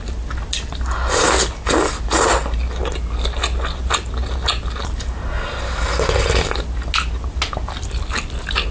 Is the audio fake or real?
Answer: real